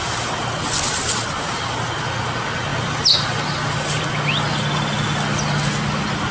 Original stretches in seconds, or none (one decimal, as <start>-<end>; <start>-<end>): 0.0-6.3